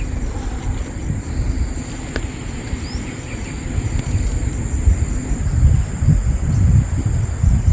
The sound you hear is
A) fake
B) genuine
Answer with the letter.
B